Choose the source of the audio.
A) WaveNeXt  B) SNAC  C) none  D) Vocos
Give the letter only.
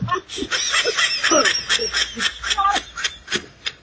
C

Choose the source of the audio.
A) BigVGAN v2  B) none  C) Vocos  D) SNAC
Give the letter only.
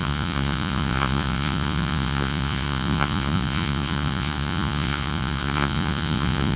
C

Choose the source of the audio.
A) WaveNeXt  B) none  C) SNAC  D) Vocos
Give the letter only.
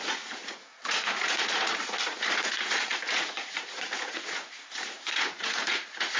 D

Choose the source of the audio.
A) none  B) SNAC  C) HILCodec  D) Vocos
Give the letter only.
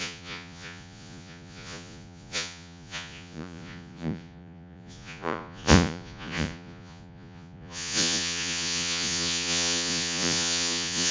D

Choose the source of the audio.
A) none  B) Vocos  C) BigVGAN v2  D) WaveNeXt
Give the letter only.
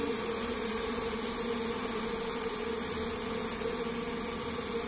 A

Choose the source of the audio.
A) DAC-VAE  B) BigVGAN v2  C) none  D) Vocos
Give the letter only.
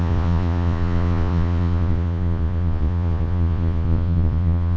D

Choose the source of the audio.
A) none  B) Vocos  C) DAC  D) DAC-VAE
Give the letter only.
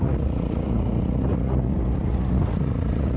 B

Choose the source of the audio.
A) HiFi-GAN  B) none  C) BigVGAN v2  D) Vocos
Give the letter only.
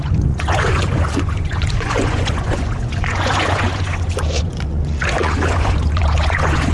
D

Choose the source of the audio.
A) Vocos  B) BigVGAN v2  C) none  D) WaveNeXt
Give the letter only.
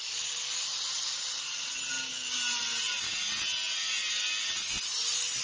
C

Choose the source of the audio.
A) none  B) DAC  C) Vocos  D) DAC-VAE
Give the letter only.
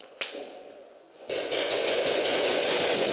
C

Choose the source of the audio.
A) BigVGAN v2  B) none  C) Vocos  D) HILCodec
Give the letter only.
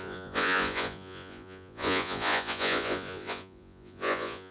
C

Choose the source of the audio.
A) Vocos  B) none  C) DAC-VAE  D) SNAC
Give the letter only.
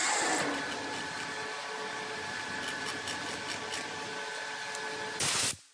B